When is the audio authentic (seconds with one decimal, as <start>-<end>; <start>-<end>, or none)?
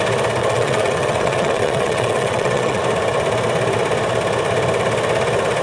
0.0-0.4; 2.8-5.6